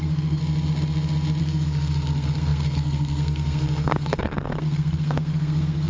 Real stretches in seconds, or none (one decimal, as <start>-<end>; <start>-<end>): 0.4-1.4